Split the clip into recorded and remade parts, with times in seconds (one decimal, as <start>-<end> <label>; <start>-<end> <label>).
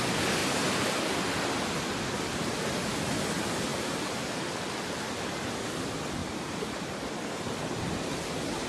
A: 0.0-0.4 recorded; 0.4-1.2 remade; 1.2-3.7 recorded; 3.7-4.5 remade; 4.5-6.2 recorded; 6.2-7.0 remade; 7.0-8.7 recorded